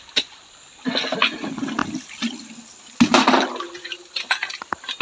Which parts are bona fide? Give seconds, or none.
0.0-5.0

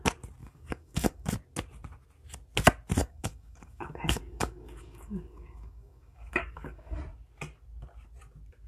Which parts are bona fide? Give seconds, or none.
0.0-0.4; 1.3-3.0; 7.0-8.7

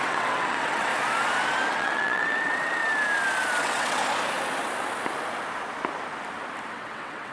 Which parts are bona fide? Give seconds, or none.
0.9-1.7; 2.8-3.6; 4.0-6.7

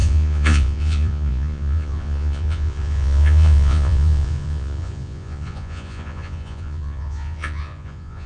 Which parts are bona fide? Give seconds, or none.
none

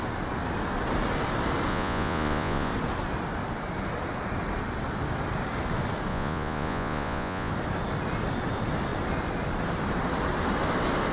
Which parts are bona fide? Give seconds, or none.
0.0-1.7; 2.7-6.1; 7.5-11.1

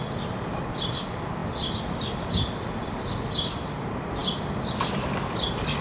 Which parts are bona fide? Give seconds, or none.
0.0-5.8

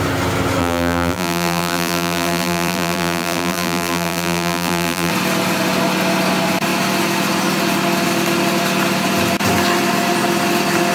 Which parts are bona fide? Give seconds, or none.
0.0-0.6; 5.1-10.9